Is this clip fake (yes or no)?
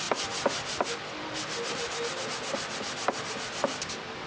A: no